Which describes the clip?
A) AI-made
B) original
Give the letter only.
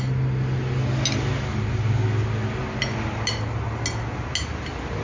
B